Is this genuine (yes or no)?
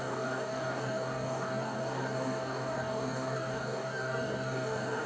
no